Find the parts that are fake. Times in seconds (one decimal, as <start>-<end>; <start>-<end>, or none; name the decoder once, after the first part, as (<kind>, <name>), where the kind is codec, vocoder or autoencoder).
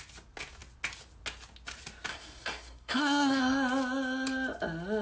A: 2.1-3.4 (codec, SNAC)